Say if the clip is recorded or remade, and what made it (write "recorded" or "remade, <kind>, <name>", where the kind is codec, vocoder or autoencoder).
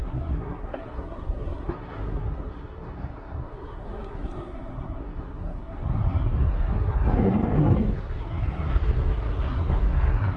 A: remade, codec, SNAC